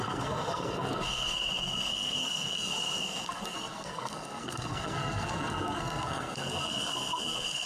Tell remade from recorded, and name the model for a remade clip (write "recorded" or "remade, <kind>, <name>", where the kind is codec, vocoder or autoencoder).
remade, codec, SNAC